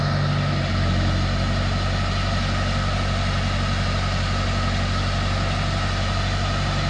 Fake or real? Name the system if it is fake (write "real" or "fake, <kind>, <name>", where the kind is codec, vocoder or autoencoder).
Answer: real